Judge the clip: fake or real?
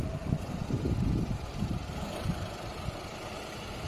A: fake